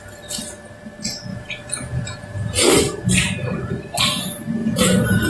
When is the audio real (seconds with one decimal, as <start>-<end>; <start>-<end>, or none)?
0.0-1.3; 2.7-4.6

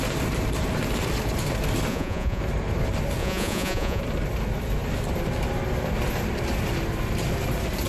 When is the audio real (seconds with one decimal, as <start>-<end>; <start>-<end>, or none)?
0.0-1.9; 2.4-3.2; 4.0-7.9

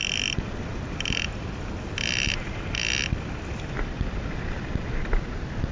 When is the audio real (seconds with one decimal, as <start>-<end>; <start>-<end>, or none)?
0.0-5.7

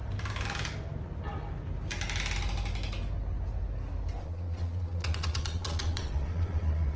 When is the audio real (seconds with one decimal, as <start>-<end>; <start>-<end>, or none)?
0.0-4.2

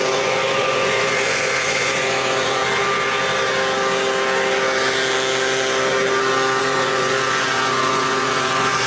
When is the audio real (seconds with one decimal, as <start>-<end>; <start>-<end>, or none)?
2.6-6.6